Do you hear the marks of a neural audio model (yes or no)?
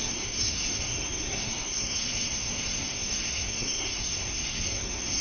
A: yes